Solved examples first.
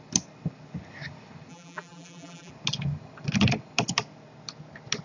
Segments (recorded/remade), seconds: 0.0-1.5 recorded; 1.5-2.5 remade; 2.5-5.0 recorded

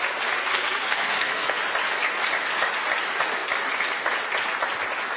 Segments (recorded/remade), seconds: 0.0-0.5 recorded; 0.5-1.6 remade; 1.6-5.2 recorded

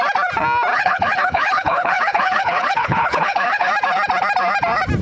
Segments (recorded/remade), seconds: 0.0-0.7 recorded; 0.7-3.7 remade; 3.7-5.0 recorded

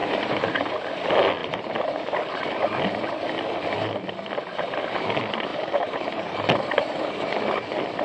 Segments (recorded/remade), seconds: 0.0-0.7 remade; 0.7-1.4 recorded; 1.4-2.0 remade; 2.0-5.5 recorded; 5.5-7.0 remade; 7.0-8.0 recorded